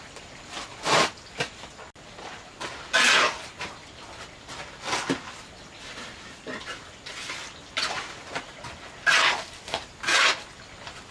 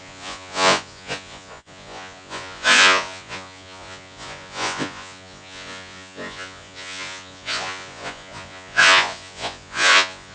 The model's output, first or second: second